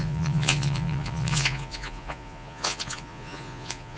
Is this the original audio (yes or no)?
no